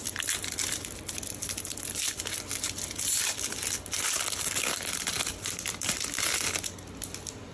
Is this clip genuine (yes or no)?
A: yes